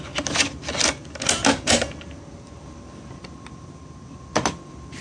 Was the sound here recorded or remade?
recorded